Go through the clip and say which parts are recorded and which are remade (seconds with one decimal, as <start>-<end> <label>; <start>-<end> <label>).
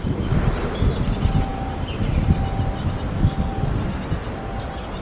0.0-5.0 recorded